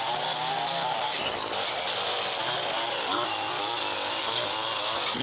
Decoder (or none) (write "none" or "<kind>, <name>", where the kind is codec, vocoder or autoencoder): none